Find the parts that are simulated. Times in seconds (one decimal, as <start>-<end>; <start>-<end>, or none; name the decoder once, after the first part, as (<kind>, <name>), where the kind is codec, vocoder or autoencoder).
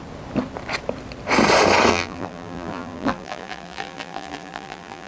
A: 1.9-5.1 (vocoder, BigVGAN v2)